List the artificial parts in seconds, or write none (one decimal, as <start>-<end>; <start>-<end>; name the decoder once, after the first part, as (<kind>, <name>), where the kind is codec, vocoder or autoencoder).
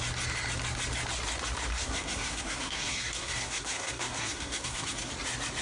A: 1.7-5.1 (codec, SNAC)